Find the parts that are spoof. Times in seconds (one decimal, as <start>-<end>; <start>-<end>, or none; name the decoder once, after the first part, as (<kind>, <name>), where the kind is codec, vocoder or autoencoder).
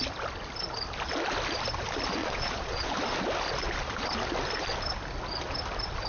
2.2-2.9 (vocoder, Vocos)